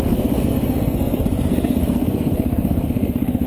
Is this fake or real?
fake